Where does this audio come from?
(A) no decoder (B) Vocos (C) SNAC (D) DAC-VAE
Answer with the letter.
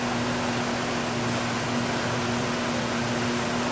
A